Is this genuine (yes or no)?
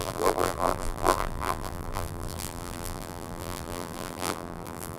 no